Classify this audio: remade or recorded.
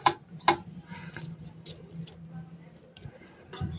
recorded